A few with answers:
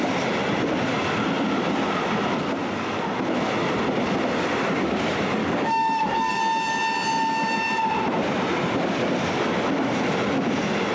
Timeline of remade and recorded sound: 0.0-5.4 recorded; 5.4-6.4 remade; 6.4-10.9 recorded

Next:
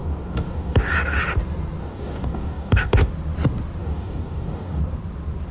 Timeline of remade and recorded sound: 0.0-1.2 remade; 1.2-1.8 recorded; 1.8-3.1 remade; 3.1-3.8 recorded; 3.8-4.8 remade; 4.8-5.5 recorded

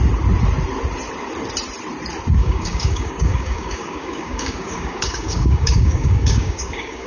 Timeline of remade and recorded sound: 0.0-2.4 recorded; 2.4-7.1 remade

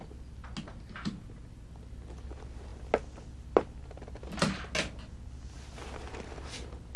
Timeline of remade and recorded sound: 0.0-7.0 recorded

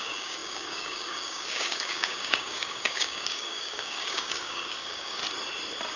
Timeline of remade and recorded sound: 0.0-5.2 remade; 5.2-6.0 recorded

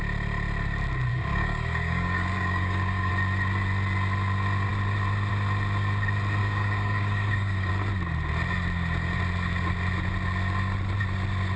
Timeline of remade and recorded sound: 0.0-1.1 recorded; 1.1-3.1 remade; 3.1-6.4 recorded; 6.4-7.7 remade; 7.7-11.6 recorded